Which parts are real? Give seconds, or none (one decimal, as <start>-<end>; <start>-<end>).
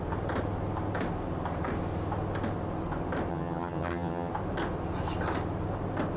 0.0-3.3; 4.3-6.2